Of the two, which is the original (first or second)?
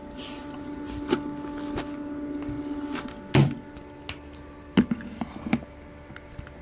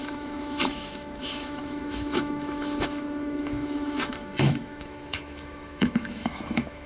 first